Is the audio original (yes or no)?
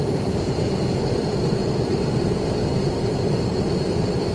no